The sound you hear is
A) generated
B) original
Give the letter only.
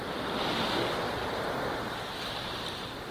B